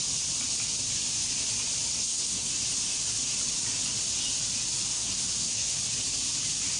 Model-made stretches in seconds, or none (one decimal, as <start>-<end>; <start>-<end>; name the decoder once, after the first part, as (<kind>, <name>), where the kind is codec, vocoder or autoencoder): 1.9-2.5 (codec, SNAC); 4.9-5.8